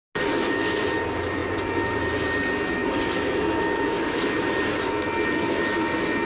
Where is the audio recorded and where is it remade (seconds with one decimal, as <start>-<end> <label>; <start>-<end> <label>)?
0.0-6.2 recorded

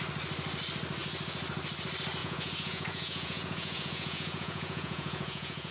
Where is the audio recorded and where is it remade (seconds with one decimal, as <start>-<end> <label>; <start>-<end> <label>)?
0.0-2.2 recorded; 2.2-5.7 remade

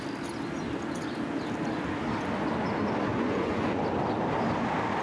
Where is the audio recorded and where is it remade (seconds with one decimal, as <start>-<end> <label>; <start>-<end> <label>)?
0.0-3.1 recorded; 3.1-3.8 remade; 3.8-5.0 recorded

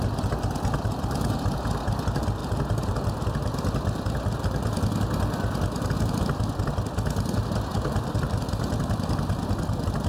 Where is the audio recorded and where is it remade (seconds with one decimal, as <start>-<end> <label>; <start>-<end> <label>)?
0.0-7.7 recorded; 7.7-8.7 remade; 8.7-10.1 recorded

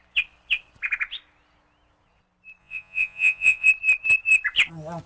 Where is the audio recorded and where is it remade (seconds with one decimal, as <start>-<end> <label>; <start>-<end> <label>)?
0.0-2.6 recorded; 2.6-3.7 remade; 3.7-5.1 recorded

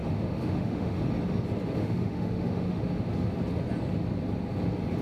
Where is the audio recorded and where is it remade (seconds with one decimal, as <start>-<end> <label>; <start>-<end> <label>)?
0.0-1.0 remade; 1.0-1.8 recorded; 1.8-2.8 remade; 2.8-5.0 recorded

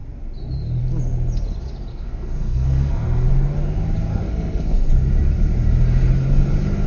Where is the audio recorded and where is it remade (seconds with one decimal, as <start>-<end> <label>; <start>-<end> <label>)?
0.0-1.9 recorded; 1.9-3.3 remade; 3.3-4.1 recorded; 4.1-4.9 remade; 4.9-6.9 recorded